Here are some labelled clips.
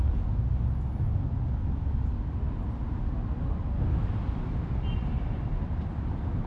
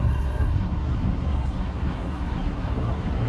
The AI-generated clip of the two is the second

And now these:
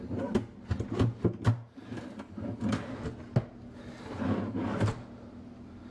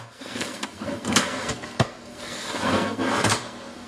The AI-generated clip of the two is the second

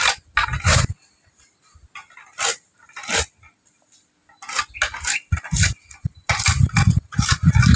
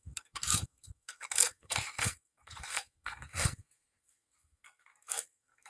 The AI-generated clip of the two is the second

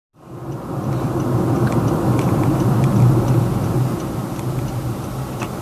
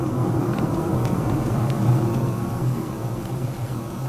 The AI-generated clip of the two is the second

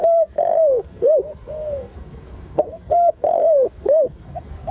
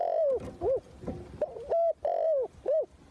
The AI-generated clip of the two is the first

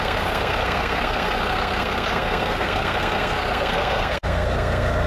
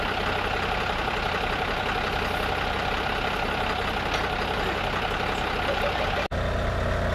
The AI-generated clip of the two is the first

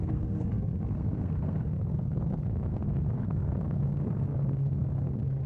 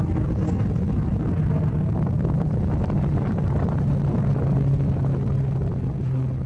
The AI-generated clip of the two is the first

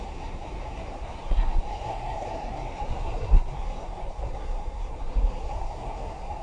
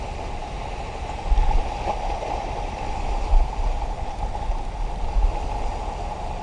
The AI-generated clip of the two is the first